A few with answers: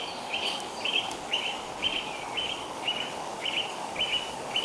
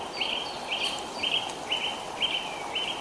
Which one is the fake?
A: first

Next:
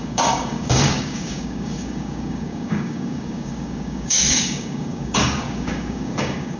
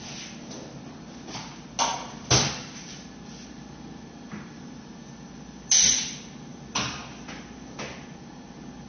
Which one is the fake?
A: first